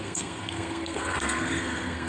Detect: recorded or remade remade